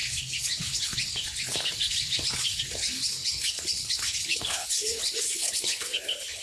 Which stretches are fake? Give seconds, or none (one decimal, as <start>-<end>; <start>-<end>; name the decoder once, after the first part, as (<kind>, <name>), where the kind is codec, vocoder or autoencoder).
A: 0.0-6.4 (codec, HILCodec)